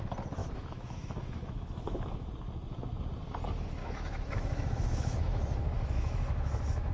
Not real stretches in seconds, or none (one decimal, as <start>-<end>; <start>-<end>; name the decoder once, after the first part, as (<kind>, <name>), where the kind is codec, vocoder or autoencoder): 0.4-2.3 (autoencoder, DAC-VAE); 3.8-6.9